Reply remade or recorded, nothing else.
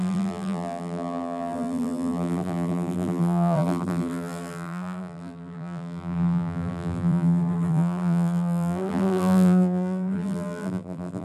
remade